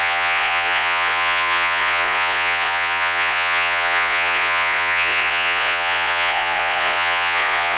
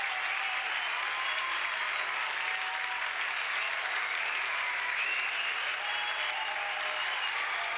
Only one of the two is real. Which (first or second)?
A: second